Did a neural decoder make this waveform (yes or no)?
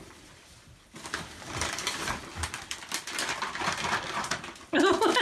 yes